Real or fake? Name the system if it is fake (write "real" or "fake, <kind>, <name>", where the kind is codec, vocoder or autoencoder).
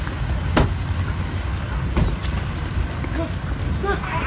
real